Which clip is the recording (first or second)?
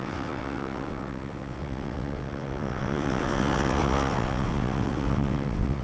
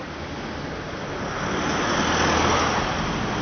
second